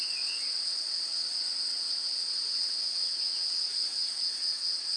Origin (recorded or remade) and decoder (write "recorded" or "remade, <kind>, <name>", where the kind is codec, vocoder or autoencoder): remade, vocoder, WaveNeXt